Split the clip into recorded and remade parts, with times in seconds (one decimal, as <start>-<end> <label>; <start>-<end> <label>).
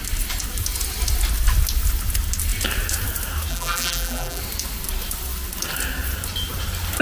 0.0-3.5 recorded; 3.5-4.4 remade; 4.4-7.0 recorded